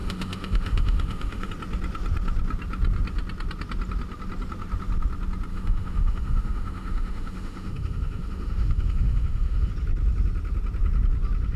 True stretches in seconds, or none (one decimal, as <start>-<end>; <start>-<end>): 1.5-5.5; 9.7-11.6